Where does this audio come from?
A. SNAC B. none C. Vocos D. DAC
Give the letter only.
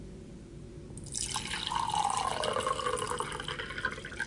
B